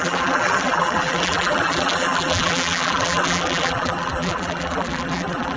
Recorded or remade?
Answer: remade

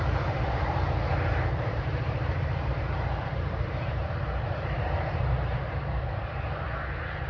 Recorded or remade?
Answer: remade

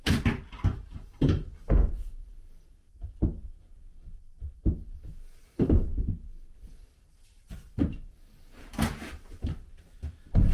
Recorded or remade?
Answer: remade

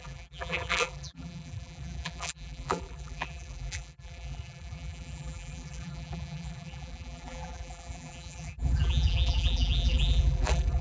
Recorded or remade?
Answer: remade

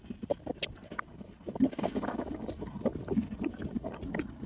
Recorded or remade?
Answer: recorded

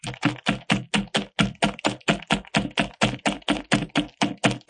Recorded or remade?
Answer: recorded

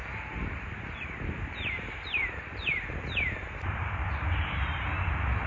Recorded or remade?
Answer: remade